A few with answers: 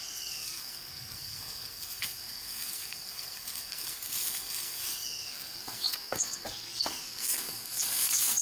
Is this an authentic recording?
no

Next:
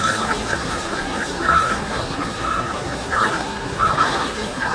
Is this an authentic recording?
no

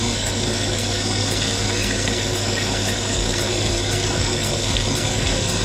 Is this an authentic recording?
no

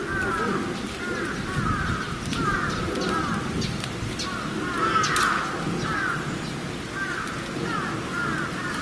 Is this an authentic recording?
yes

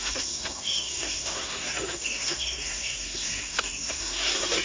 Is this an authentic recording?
no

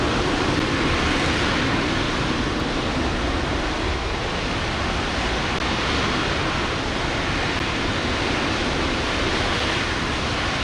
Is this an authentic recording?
yes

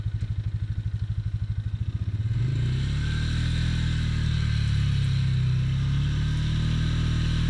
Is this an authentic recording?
yes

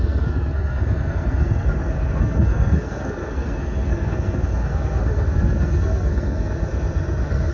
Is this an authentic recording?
no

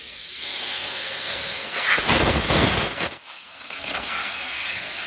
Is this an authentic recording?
no